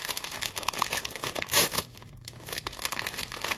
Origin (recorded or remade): remade